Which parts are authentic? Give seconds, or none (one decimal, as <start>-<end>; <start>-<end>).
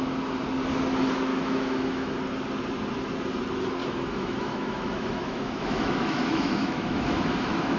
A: 0.0-1.3; 2.2-3.8